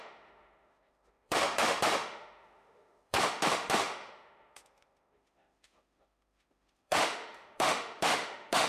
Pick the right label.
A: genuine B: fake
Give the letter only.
B